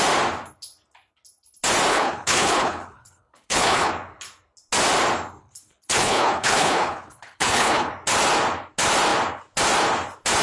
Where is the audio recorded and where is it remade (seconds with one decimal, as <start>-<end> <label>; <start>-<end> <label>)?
0.0-1.9 recorded; 1.9-3.9 remade; 3.9-5.4 recorded; 5.4-7.9 remade; 7.9-10.4 recorded